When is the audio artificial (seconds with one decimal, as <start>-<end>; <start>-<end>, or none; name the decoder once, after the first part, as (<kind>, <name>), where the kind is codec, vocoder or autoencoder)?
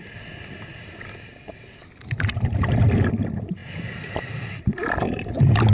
none